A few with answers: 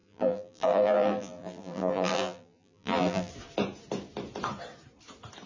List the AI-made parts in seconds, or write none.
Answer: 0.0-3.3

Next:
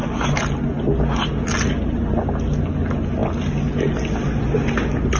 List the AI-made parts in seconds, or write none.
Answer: none

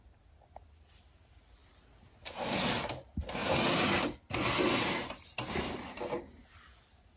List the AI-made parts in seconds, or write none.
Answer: none

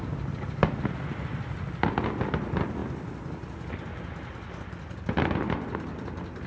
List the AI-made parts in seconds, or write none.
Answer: none

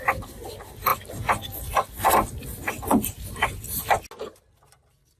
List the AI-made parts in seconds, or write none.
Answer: none

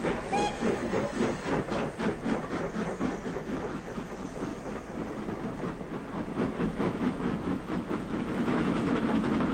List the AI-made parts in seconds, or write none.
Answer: 0.0-0.8; 3.3-4.5; 6.6-9.5

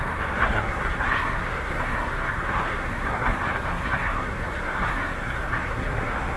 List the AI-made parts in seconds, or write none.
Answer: 0.0-6.4